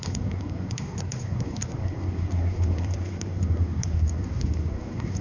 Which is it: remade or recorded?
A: remade